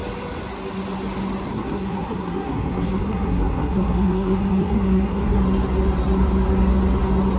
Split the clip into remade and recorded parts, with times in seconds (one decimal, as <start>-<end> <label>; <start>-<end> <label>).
0.0-1.5 recorded; 1.5-5.4 remade; 5.4-7.4 recorded